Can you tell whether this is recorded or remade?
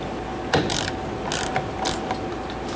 recorded